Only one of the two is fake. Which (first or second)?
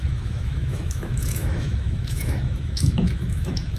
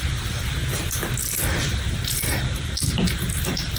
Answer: first